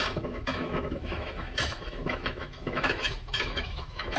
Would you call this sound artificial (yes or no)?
yes